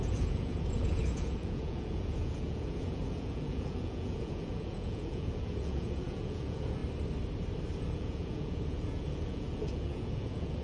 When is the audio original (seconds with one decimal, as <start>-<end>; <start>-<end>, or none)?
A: 6.8-7.8